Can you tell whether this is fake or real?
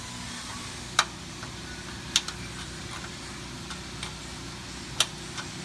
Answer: real